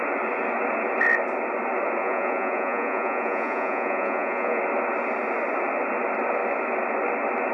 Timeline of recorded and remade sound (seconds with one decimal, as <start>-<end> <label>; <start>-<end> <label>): 0.0-2.0 recorded; 2.0-4.6 remade; 4.6-7.5 recorded